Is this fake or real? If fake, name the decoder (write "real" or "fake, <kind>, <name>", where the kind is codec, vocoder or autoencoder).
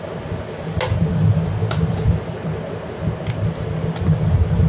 real